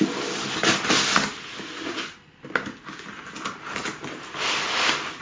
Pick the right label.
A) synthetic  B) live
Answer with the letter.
B